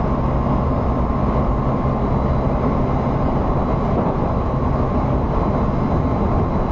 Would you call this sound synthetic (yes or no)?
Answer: no